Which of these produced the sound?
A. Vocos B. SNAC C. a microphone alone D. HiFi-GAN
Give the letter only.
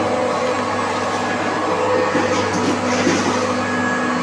C